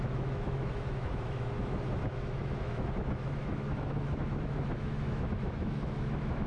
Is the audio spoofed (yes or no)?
yes